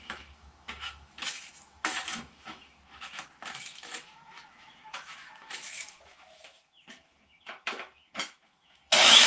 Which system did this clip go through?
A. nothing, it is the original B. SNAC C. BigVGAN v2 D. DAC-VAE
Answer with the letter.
D